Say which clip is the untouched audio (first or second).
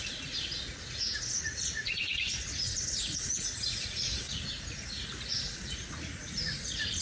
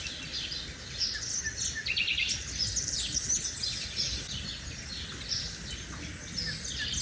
second